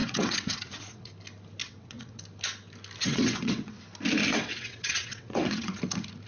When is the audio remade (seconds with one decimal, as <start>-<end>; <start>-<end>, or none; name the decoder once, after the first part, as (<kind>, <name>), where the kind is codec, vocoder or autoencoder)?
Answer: 0.0-1.1 (vocoder, WaveNeXt); 1.6-2.2; 3.0-3.8; 4.3-5.8